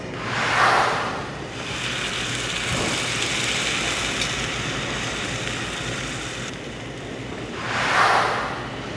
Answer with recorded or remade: recorded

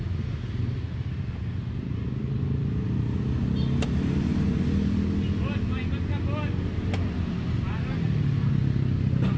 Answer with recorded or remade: recorded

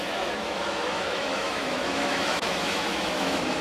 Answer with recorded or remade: remade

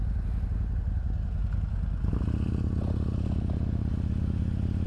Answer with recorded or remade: recorded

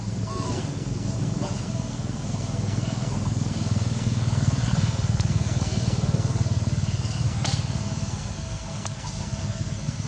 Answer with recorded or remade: remade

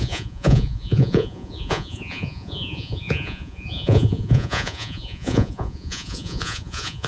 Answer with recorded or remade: remade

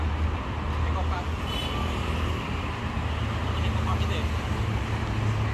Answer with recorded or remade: recorded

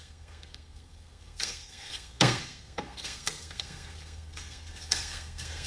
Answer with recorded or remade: remade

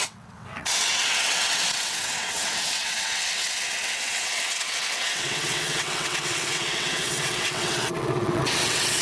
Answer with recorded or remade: remade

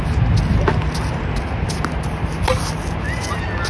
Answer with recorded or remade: recorded